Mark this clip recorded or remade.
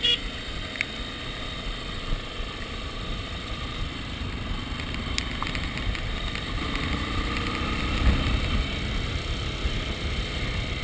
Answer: recorded